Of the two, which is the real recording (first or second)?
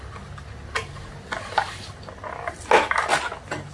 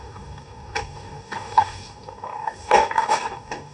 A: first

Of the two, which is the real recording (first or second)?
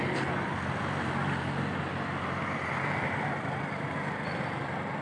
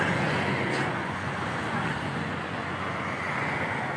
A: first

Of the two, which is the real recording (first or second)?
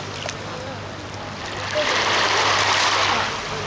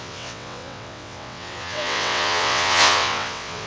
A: first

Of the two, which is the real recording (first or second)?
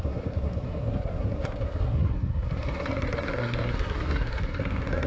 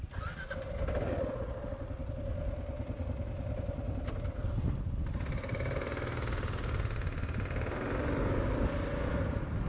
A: second